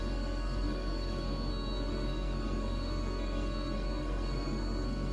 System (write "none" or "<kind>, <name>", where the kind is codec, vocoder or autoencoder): codec, SNAC